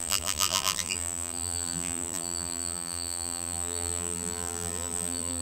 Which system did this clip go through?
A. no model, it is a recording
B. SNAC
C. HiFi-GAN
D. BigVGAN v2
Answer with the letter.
D